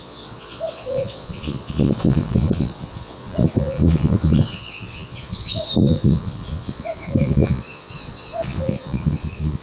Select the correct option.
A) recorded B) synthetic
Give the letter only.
B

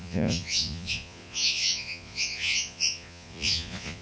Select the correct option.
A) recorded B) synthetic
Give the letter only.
B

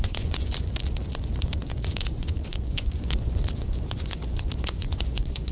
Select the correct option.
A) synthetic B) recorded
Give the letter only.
A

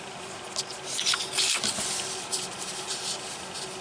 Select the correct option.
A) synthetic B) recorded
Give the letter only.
B